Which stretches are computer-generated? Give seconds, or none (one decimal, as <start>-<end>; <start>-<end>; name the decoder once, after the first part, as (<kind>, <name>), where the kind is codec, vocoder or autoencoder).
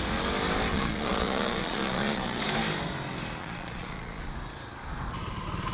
0.7-2.4 (vocoder, Vocos); 3.4-4.2